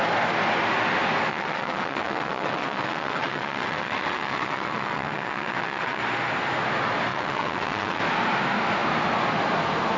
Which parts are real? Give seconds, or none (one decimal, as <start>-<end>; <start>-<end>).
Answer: 0.0-1.3; 6.0-7.1; 8.0-10.0